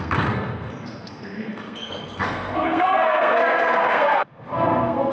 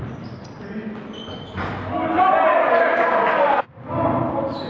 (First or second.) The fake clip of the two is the first